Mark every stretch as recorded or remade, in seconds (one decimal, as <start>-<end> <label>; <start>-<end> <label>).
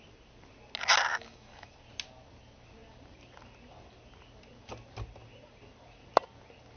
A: 0.0-1.1 recorded; 1.1-1.7 remade; 1.7-6.8 recorded